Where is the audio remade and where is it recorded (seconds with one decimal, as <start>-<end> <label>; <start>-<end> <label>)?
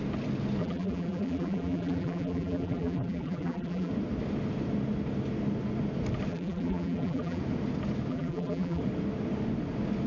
0.0-0.6 recorded; 0.6-3.9 remade; 3.9-6.3 recorded; 6.3-7.4 remade; 7.4-8.1 recorded; 8.1-8.8 remade; 8.8-10.1 recorded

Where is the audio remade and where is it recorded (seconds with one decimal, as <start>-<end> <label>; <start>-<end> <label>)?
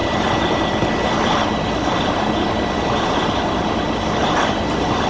0.0-2.1 remade; 2.1-4.2 recorded; 4.2-5.1 remade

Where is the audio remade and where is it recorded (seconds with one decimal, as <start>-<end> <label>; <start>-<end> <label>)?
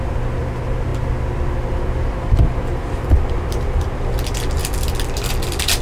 0.0-5.8 recorded